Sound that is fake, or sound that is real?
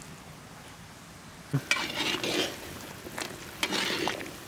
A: real